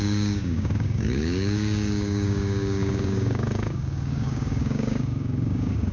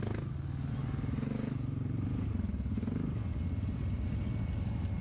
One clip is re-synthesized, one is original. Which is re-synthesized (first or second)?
first